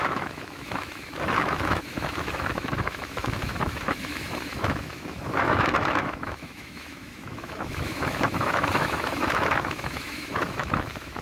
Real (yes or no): no